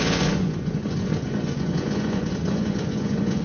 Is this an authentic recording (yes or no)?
no